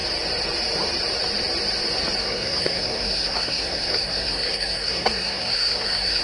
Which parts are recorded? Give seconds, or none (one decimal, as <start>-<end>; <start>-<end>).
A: 0.0-2.2